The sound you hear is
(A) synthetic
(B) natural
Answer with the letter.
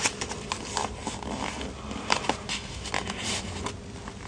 B